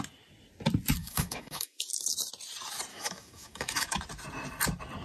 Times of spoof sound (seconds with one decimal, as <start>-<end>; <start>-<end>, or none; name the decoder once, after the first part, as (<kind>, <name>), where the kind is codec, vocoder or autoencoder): 1.0-1.9 (autoencoder, DAC-VAE); 2.9-4.0